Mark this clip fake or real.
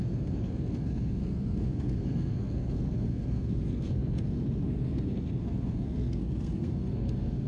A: fake